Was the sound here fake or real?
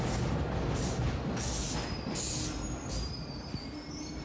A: real